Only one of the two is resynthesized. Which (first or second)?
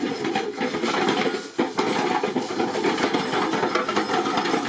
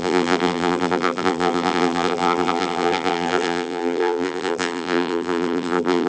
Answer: second